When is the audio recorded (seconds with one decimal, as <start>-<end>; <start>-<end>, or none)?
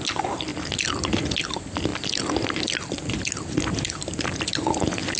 0.0-5.2